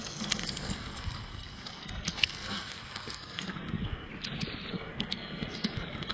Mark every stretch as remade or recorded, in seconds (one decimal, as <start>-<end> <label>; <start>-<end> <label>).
0.0-4.1 remade; 4.1-4.7 recorded; 4.7-6.1 remade